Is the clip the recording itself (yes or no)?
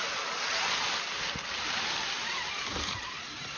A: yes